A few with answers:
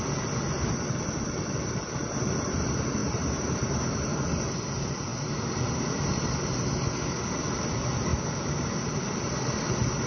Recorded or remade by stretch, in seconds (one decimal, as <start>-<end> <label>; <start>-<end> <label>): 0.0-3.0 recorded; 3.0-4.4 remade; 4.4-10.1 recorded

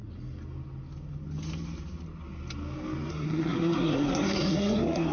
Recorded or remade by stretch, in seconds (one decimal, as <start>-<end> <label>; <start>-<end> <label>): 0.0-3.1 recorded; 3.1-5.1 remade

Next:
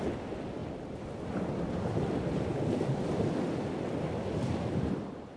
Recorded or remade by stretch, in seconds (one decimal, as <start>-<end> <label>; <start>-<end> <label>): 0.0-0.6 recorded; 0.6-1.7 remade; 1.7-5.4 recorded